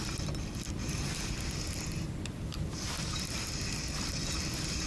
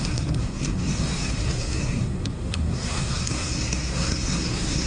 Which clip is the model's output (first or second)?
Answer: second